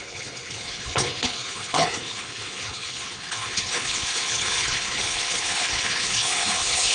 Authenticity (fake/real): fake